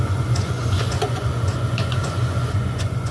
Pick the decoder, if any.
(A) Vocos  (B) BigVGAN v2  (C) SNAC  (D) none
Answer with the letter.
A